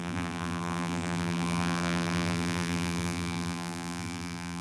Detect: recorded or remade remade